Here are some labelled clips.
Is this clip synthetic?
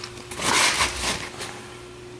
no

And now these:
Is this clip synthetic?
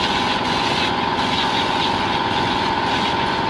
yes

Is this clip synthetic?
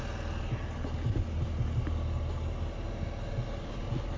no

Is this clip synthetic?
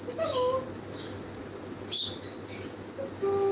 no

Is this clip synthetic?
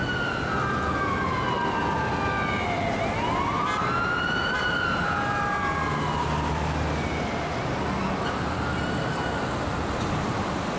no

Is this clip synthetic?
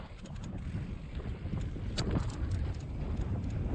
no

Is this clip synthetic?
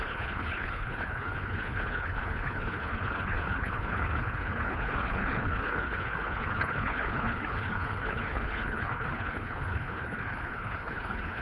yes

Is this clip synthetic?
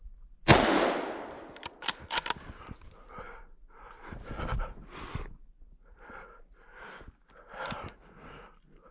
no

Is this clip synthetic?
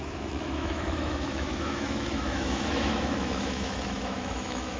yes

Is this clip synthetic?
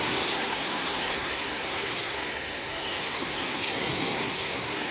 yes